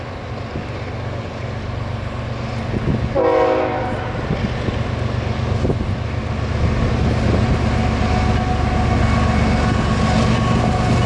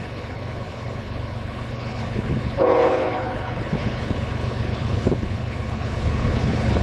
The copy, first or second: second